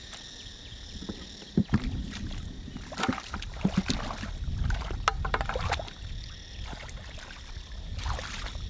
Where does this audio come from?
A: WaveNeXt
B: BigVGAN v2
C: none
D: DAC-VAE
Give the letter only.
C